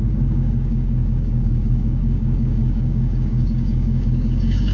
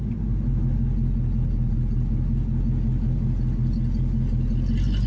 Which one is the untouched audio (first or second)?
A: second